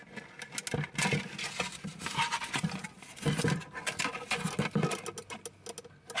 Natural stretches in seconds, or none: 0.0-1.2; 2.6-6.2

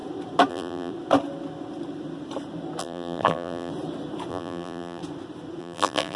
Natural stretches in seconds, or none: 0.0-0.5; 0.9-2.8; 3.7-4.3; 5.0-5.6